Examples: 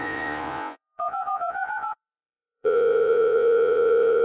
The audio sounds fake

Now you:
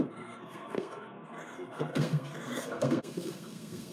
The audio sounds fake